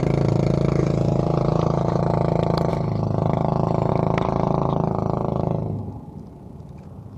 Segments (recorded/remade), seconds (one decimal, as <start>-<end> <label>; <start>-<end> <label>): 0.0-0.8 recorded; 0.8-2.0 remade; 2.0-7.2 recorded